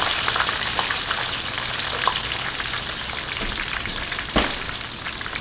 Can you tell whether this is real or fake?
fake